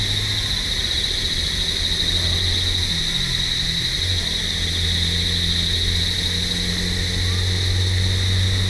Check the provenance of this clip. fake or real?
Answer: real